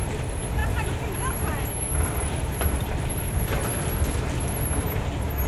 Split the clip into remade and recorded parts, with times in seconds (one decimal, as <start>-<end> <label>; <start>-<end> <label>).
0.0-0.6 recorded; 0.6-3.9 remade; 3.9-5.5 recorded